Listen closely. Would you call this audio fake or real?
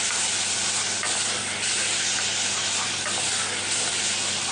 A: real